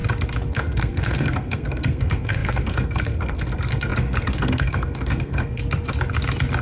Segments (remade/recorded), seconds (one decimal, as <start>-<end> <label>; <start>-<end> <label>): 0.0-0.5 recorded; 0.5-5.6 remade; 5.6-6.6 recorded